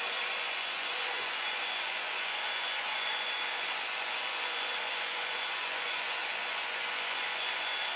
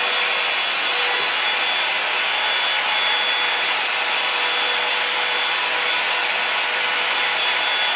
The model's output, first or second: first